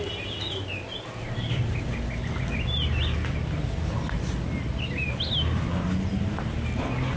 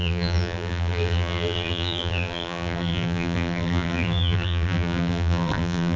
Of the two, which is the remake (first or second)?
second